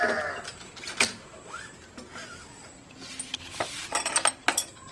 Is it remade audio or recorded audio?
recorded